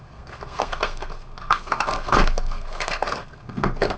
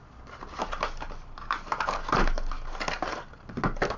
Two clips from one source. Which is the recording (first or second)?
second